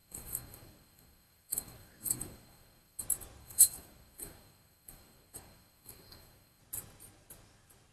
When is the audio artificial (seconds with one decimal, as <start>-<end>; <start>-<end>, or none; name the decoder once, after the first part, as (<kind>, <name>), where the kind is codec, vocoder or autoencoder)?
0.0-3.0 (codec, SNAC); 3.4-6.6